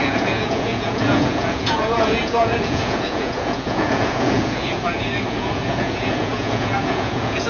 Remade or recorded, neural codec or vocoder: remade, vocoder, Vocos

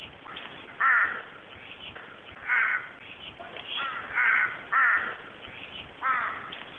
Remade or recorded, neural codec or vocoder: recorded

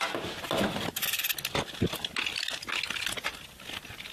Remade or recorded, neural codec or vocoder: recorded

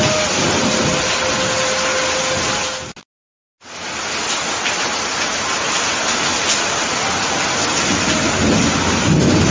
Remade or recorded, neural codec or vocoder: recorded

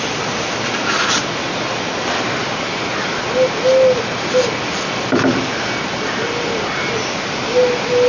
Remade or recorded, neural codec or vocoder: recorded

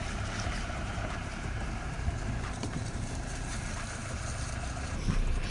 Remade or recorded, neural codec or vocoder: remade, vocoder, BigVGAN v2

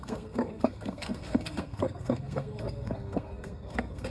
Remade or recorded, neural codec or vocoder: remade, codec, SNAC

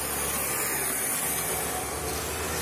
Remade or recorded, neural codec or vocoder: recorded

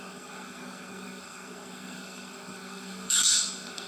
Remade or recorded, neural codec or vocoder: remade, codec, SNAC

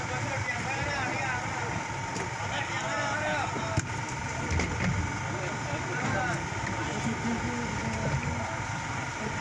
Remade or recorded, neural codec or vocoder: recorded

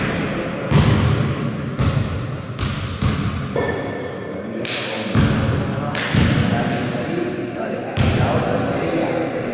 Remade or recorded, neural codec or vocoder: recorded